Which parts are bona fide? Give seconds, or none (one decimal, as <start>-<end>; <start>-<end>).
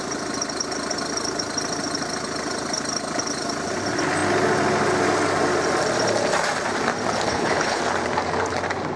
0.0-7.3; 7.8-9.0